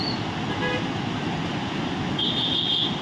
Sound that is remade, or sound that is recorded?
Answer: recorded